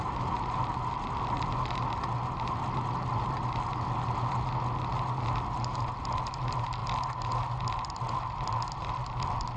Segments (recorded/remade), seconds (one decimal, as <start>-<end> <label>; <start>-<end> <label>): 0.0-9.6 recorded